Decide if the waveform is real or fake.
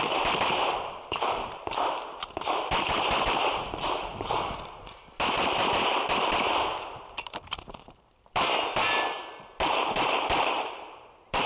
fake